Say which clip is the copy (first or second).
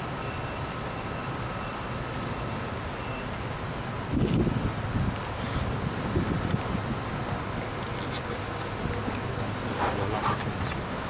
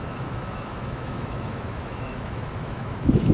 second